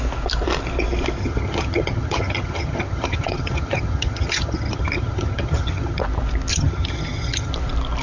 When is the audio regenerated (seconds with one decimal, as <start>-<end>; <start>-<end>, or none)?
1.2-6.0; 6.5-7.5